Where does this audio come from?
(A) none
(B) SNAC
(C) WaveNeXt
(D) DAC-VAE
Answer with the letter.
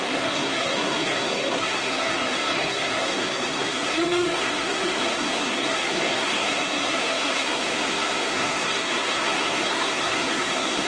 B